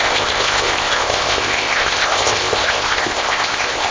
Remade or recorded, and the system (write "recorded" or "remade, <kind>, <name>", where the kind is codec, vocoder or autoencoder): remade, codec, ZipCodec